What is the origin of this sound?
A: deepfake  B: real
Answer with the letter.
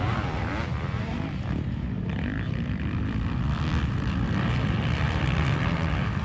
A